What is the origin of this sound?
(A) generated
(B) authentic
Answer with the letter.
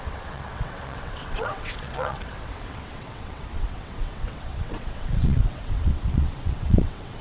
A